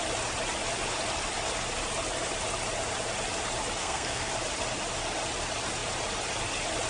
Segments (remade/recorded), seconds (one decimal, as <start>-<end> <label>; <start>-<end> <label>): 0.0-3.8 recorded; 3.8-4.3 remade; 4.3-6.9 recorded